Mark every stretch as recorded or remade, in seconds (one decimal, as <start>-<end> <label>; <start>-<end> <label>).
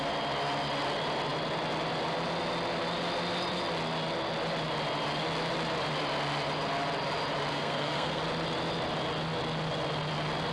0.0-7.5 recorded; 7.5-8.2 remade; 8.2-10.5 recorded